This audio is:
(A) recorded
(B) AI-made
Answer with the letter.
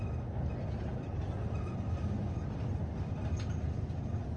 A